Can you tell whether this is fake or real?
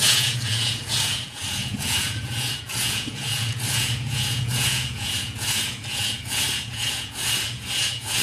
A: fake